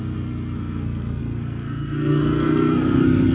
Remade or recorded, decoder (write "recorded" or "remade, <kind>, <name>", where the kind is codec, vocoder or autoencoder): remade, codec, SNAC